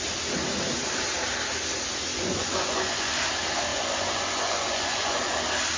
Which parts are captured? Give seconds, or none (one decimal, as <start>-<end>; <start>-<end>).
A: 0.0-2.1; 3.1-3.7; 5.2-5.8